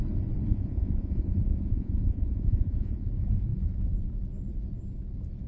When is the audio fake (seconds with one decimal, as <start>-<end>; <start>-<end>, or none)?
0.5-3.1